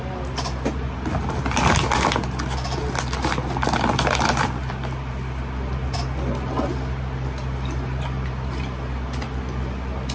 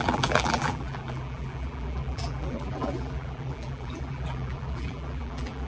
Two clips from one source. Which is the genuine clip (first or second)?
first